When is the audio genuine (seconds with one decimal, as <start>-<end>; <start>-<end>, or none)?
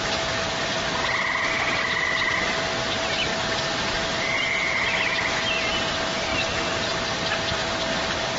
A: 0.0-3.3; 5.4-6.3; 6.9-8.4